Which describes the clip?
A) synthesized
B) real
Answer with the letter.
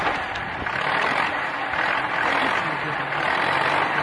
B